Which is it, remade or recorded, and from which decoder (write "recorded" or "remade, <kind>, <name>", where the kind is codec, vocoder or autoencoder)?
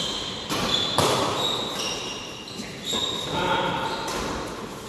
recorded